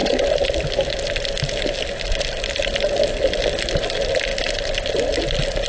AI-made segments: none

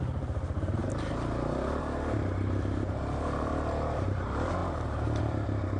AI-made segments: 0.0-0.8 (vocoder, BigVGAN v2); 1.8-3.5; 4.0-5.8